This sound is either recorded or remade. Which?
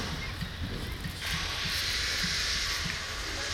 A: remade